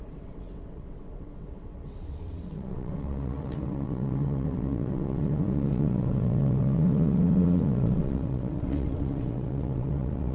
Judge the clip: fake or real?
fake